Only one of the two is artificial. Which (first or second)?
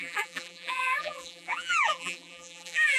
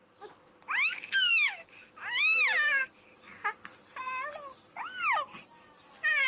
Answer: first